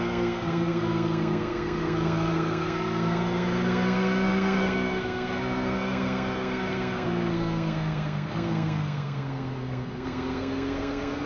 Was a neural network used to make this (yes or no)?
yes